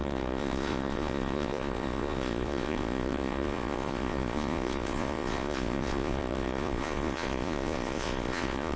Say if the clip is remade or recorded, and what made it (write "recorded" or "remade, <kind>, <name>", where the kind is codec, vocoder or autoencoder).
remade, vocoder, Vocos